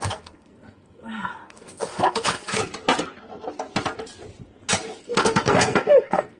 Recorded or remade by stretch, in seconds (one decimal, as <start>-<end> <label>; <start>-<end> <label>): 0.0-2.6 remade; 2.6-5.0 recorded; 5.0-6.4 remade